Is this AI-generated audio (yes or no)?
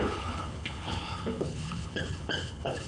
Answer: yes